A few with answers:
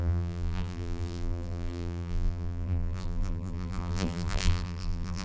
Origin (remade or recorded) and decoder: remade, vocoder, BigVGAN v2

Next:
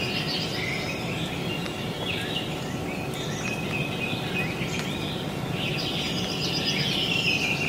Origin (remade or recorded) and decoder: recorded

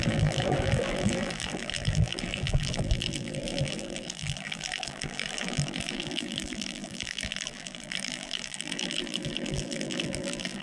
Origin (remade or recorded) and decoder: remade, vocoder, BigVGAN v2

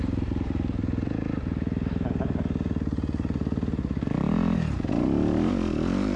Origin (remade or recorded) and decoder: recorded